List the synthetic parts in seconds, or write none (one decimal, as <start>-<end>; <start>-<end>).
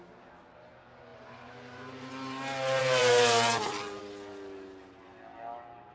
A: 1.1-2.1; 2.8-4.0